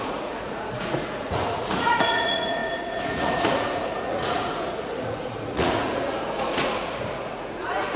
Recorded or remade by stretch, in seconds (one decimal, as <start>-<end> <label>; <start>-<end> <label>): 0.0-8.0 remade